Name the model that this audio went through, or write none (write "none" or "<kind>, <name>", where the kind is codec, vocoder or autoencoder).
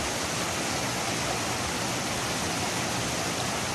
none